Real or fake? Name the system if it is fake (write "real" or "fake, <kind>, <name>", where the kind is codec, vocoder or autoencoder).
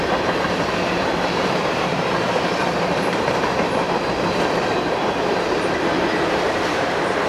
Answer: fake, vocoder, BigVGAN v2